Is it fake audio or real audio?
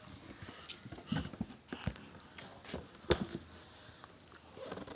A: real